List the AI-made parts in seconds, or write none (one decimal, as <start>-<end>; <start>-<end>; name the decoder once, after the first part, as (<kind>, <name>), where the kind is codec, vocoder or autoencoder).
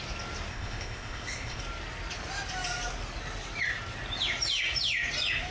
0.5-1.6 (codec, ZipCodec)